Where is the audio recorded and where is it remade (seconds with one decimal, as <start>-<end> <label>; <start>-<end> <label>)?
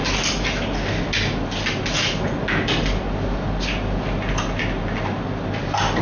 0.0-6.0 recorded